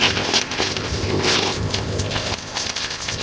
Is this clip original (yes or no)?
no